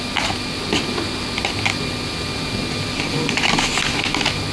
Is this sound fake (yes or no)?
no